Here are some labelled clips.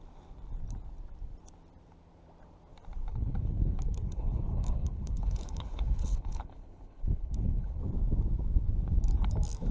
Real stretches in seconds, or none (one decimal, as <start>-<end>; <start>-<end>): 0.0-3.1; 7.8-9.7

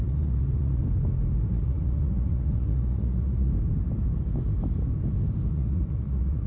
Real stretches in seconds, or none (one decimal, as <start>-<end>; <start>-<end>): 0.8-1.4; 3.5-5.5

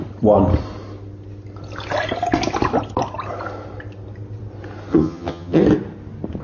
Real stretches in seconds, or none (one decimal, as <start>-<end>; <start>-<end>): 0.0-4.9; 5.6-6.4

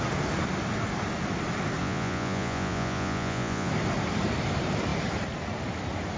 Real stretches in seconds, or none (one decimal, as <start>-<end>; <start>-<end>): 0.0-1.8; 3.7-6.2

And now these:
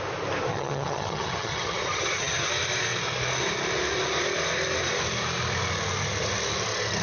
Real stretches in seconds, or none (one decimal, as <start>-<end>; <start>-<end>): 0.0-0.5; 2.5-7.0

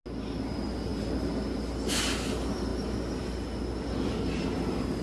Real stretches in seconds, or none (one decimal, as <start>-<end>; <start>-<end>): 0.0-5.0